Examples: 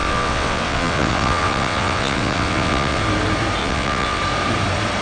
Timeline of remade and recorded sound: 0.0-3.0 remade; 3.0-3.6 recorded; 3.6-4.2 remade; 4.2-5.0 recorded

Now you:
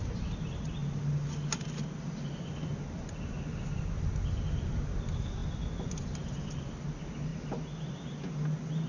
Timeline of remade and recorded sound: 0.0-8.9 recorded

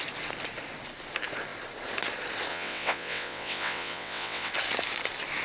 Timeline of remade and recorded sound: 0.0-2.5 recorded; 2.5-4.5 remade; 4.5-5.4 recorded